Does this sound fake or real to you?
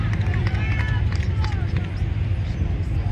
real